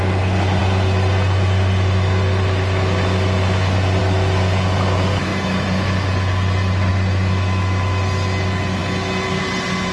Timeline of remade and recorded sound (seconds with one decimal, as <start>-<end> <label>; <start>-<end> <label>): 0.0-9.9 recorded